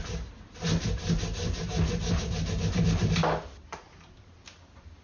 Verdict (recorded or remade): recorded